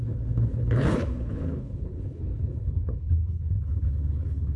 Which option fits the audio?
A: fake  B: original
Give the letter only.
A